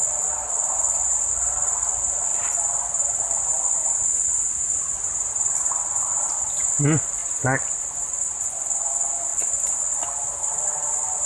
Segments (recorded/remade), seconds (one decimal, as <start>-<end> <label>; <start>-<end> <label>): 0.0-7.2 recorded; 7.2-8.2 remade; 8.2-9.3 recorded; 9.3-10.2 remade; 10.2-11.3 recorded